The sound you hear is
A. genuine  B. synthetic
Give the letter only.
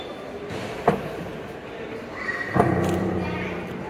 B